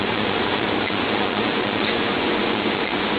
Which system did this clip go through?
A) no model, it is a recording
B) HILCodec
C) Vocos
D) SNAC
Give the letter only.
C